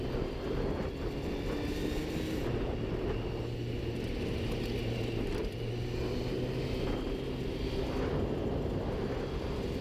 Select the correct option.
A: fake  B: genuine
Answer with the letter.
B